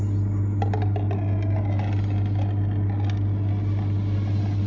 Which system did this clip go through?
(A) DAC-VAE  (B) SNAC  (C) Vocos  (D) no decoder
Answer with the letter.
D